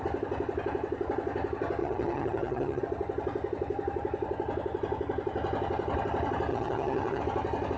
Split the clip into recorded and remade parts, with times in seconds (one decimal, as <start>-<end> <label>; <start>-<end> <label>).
0.0-1.8 recorded; 1.8-2.8 remade; 2.8-6.5 recorded; 6.5-7.2 remade; 7.2-7.8 recorded